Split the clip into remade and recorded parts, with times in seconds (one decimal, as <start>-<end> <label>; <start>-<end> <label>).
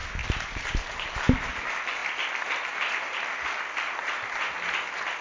0.0-5.2 recorded